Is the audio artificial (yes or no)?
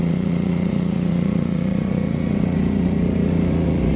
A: yes